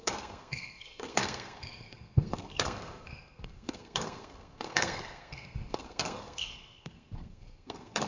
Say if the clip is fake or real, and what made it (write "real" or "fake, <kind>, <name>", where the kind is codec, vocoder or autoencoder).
fake, codec, SNAC